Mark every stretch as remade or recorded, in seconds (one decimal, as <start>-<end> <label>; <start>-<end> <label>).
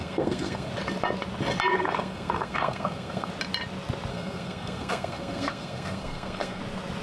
0.0-0.7 remade; 0.7-1.7 recorded; 1.7-3.3 remade; 3.3-4.1 recorded; 4.1-6.6 remade; 6.6-7.0 recorded